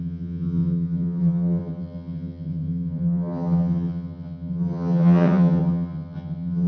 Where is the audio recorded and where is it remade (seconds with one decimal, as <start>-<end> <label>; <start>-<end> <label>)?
0.0-6.7 remade